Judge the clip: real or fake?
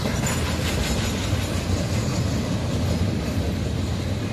real